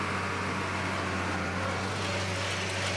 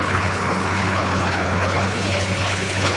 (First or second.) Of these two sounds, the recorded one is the first